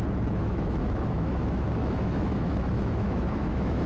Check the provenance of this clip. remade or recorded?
remade